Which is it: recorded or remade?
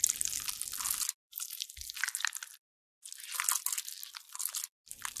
recorded